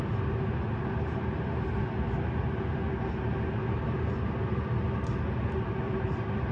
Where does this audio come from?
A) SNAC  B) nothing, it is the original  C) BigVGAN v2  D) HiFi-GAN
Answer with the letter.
B